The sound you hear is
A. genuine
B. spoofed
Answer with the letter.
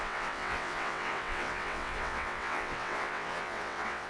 B